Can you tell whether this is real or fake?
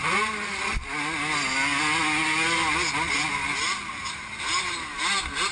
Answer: real